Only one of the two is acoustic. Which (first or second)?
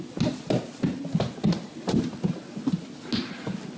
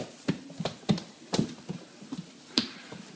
first